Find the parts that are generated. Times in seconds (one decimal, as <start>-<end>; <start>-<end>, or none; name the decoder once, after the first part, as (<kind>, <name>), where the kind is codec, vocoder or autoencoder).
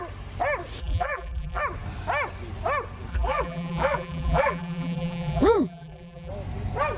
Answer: 0.8-1.6 (vocoder, BigVGAN v2); 3.1-6.3